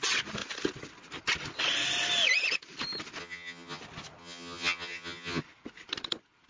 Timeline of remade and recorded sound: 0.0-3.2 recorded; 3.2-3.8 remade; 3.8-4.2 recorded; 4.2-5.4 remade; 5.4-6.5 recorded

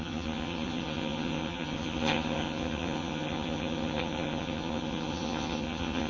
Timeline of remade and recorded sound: 0.0-6.1 remade

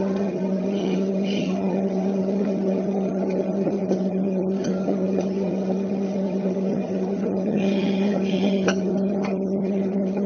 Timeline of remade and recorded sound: 0.0-10.3 remade

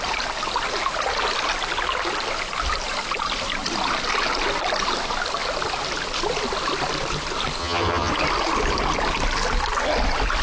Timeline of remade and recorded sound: 0.0-7.6 recorded; 7.6-8.1 remade; 8.1-10.4 recorded

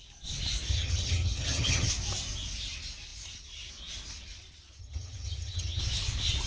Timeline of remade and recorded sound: 0.0-0.7 recorded; 0.7-1.9 remade; 1.9-4.8 recorded; 4.8-5.8 remade; 5.8-6.5 recorded